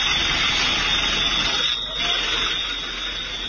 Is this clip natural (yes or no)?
yes